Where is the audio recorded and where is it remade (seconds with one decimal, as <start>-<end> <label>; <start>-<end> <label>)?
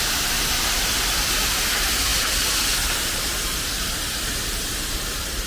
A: 0.0-5.5 recorded